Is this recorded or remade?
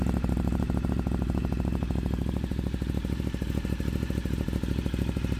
recorded